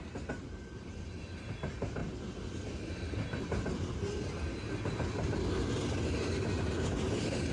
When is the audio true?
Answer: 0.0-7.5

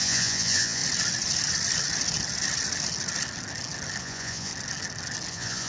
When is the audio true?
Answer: 0.8-4.0; 4.5-5.3

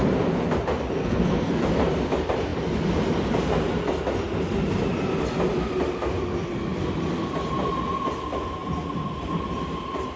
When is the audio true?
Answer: 0.0-1.0; 1.6-10.2

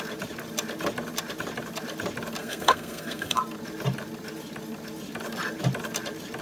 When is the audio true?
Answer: 0.0-2.4; 3.4-6.4

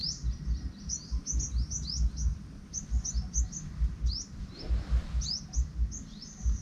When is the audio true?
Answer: 0.0-6.6

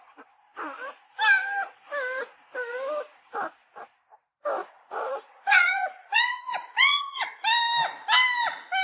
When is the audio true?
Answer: 0.0-4.6; 7.4-8.8